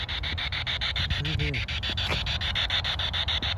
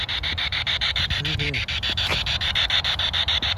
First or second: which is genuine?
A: first